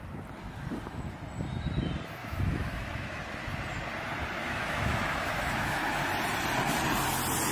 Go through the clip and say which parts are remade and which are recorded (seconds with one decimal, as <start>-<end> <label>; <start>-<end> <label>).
0.0-2.2 recorded; 2.2-3.2 remade; 3.2-4.4 recorded; 4.4-5.8 remade; 5.8-7.5 recorded